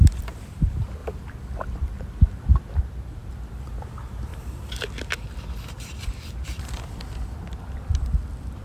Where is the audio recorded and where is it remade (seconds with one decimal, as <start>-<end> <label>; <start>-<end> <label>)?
0.0-8.6 recorded